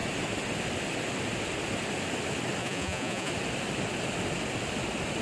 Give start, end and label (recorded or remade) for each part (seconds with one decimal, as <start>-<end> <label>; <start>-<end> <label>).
0.0-2.6 recorded; 2.6-3.3 remade; 3.3-5.2 recorded